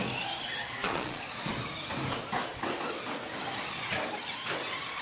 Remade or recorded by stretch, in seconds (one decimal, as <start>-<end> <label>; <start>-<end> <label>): 0.0-0.8 recorded; 0.8-1.5 remade; 1.5-5.0 recorded